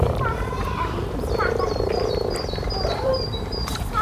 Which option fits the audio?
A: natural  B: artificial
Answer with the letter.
B